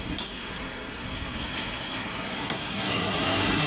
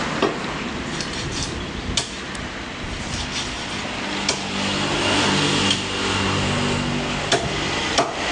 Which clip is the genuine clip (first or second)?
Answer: second